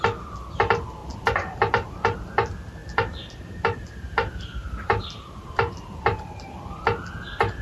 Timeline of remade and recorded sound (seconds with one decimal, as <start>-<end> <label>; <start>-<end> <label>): 0.0-1.0 recorded; 1.0-1.9 remade; 1.9-4.6 recorded; 4.6-6.0 remade; 6.0-7.6 recorded